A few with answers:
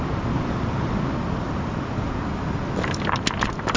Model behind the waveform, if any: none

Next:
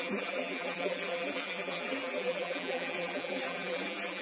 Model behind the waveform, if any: vocoder, BigVGAN v2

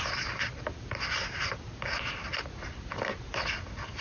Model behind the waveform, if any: none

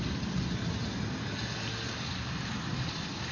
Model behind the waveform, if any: none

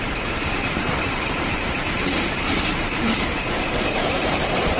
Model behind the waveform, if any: vocoder, BigVGAN v2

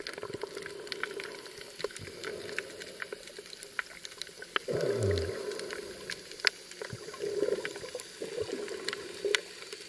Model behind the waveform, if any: none